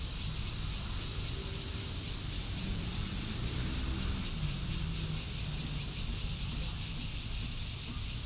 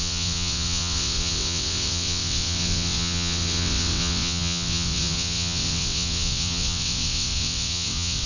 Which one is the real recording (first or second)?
first